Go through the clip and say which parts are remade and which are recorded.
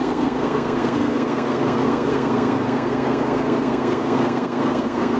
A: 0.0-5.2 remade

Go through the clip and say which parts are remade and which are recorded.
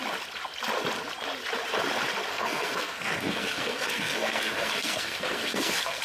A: 0.0-2.3 recorded; 2.3-6.0 remade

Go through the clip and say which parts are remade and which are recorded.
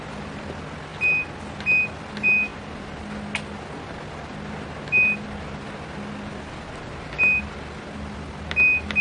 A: 0.0-9.0 recorded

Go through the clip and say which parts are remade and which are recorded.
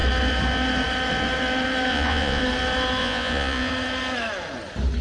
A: 0.0-1.9 recorded; 1.9-2.4 remade; 2.4-3.0 recorded; 3.0-3.7 remade; 3.7-5.0 recorded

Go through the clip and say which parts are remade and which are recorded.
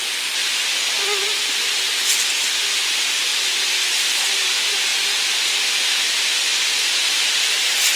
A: 0.0-8.0 recorded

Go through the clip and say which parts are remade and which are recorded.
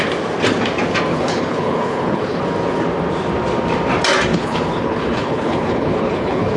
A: 0.0-1.1 recorded; 1.1-2.4 remade; 2.4-4.3 recorded; 4.3-6.6 remade